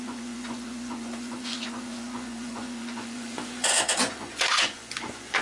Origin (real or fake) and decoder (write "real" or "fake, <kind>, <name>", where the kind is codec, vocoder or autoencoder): fake, vocoder, Vocos